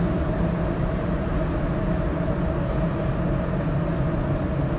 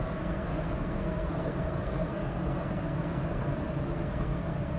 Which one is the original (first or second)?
first